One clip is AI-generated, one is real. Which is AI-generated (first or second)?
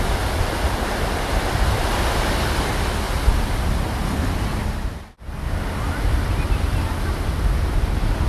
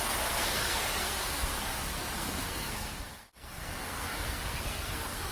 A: second